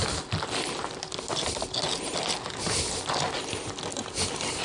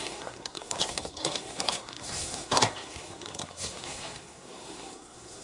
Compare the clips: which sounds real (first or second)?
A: first